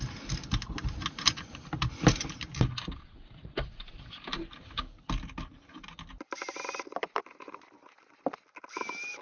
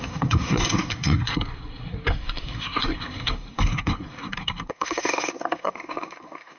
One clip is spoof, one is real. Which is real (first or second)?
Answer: first